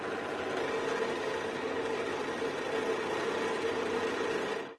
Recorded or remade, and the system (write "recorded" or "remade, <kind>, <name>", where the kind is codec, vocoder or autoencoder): recorded